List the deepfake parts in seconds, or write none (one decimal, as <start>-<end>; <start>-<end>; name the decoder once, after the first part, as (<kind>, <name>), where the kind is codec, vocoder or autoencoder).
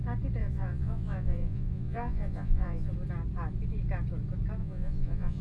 0.4-2.9 (vocoder, Vocos); 4.6-5.4